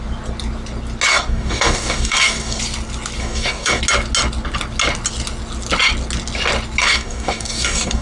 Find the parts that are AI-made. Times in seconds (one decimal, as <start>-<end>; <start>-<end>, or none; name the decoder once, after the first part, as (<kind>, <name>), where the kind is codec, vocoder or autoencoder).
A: 1.1-2.6 (codec, DAC); 3.2-3.8; 6.8-8.0